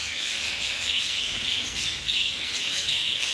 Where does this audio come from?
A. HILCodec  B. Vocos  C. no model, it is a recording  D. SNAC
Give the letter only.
D